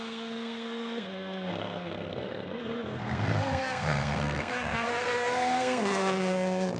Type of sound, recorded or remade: remade